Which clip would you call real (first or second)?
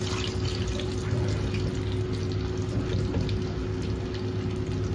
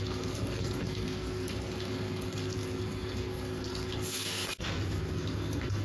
first